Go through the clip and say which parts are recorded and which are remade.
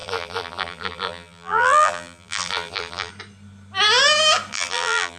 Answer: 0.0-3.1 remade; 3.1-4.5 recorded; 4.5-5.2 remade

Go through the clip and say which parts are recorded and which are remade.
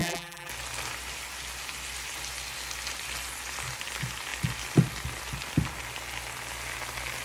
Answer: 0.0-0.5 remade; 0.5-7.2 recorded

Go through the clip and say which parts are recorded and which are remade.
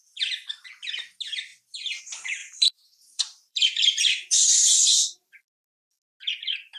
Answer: 0.0-2.4 recorded; 2.4-5.4 remade; 5.4-6.8 recorded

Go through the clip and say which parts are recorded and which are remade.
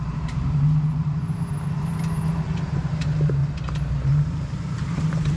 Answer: 0.0-1.2 remade; 1.2-2.3 recorded; 2.3-3.4 remade; 3.4-4.1 recorded; 4.1-5.4 remade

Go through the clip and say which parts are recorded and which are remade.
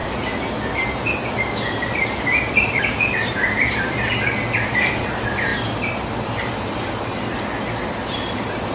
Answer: 0.0-8.7 recorded